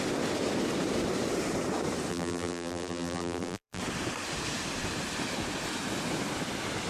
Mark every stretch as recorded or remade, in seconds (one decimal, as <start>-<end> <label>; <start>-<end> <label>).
0.0-2.1 recorded; 2.1-3.8 remade; 3.8-6.9 recorded